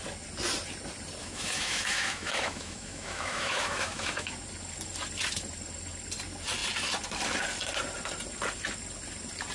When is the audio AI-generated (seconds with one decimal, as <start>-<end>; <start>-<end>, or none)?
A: 1.2-4.3